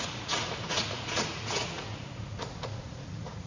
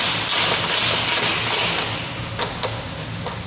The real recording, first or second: second